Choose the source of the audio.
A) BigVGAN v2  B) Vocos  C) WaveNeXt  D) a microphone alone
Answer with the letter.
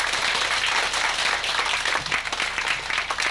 D